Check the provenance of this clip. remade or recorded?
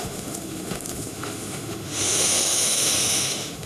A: remade